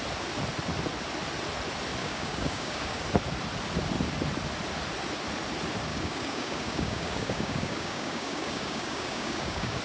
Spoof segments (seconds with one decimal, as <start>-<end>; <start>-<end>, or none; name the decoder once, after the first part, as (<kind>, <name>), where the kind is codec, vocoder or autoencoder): 2.0-3.0 (codec, DAC); 5.9-9.8